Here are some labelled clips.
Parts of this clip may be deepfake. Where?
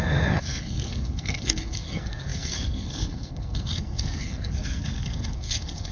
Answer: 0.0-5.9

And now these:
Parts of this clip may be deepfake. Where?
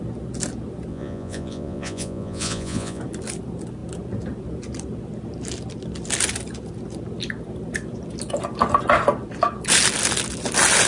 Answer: 0.9-3.0